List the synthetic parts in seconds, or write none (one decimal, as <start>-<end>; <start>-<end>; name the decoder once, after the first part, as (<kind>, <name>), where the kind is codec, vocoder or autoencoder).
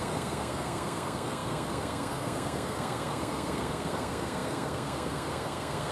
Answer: 0.0-5.9 (codec, SNAC)